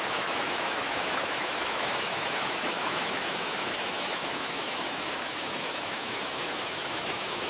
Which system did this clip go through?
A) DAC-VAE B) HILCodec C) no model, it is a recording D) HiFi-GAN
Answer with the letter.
A